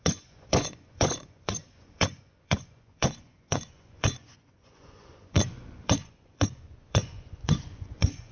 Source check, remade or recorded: remade